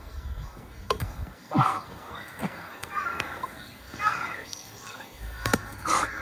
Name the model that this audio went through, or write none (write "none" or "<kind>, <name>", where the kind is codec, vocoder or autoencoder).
codec, SNAC